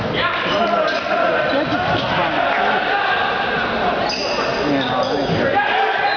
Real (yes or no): yes